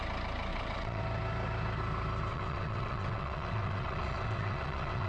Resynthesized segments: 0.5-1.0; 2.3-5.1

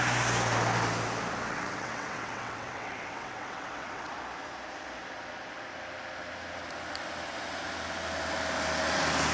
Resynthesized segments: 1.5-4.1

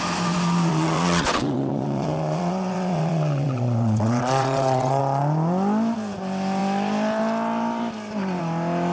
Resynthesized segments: 0.7-5.0